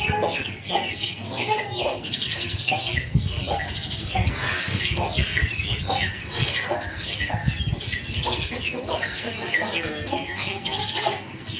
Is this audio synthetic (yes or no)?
yes